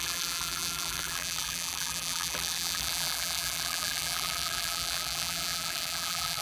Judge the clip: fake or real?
fake